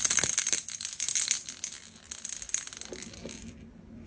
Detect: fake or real real